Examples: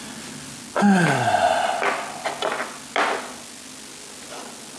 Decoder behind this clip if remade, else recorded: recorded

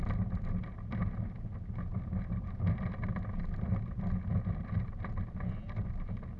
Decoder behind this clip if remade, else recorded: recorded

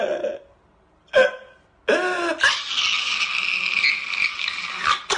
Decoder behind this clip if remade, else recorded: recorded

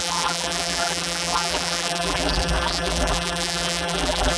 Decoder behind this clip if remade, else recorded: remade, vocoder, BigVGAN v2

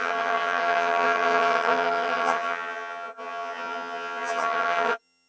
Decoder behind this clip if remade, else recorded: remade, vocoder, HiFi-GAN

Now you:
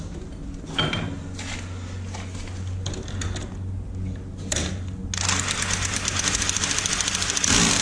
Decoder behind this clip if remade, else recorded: recorded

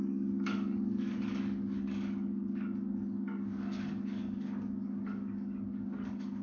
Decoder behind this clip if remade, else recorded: remade, codec, DAC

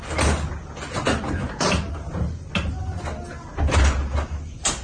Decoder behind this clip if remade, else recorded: recorded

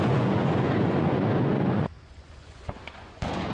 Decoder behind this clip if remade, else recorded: remade, vocoder, Vocos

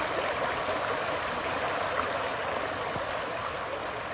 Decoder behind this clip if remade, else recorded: recorded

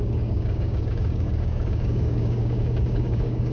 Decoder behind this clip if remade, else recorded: remade, codec, DAC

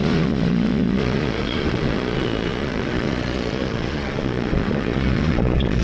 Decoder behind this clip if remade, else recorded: remade, vocoder, Vocos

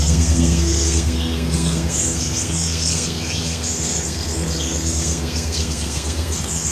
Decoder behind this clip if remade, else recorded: remade, codec, SNAC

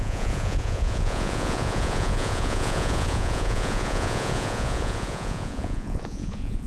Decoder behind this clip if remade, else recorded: remade, vocoder, Vocos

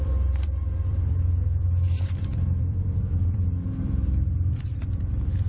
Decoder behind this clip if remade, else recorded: remade, vocoder, BigVGAN v2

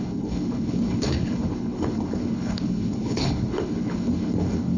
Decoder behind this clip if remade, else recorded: remade, codec, HILCodec